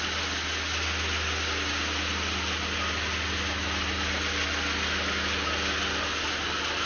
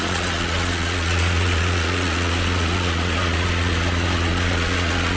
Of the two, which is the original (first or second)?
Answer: first